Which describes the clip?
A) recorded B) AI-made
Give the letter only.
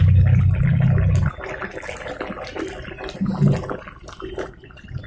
A